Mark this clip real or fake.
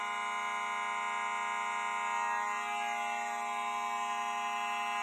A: real